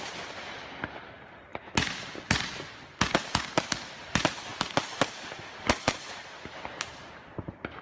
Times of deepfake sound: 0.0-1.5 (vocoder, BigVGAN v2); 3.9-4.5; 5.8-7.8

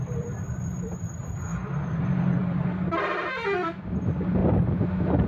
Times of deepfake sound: 0.0-1.5 (vocoder, BigVGAN v2); 2.0-4.4

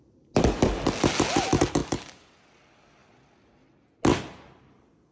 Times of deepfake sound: none

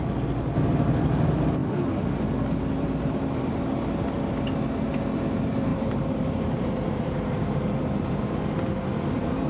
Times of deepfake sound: 5.7-8.2 (vocoder, BigVGAN v2)

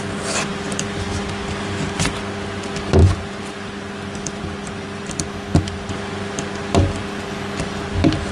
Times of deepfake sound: 0.5-1.2 (vocoder, BigVGAN v2); 3.0-5.9; 7.0-7.8

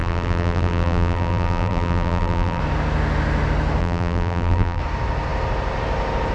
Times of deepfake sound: 0.0-2.6 (vocoder, BigVGAN v2); 3.8-4.8

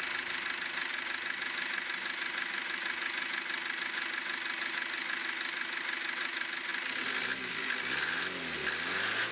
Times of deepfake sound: none

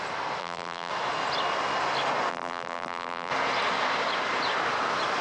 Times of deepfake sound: 0.4-0.9 (vocoder, BigVGAN v2); 2.3-3.3